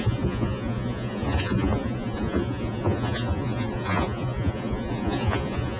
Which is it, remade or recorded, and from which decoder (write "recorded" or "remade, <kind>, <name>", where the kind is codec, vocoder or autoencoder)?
remade, vocoder, Vocos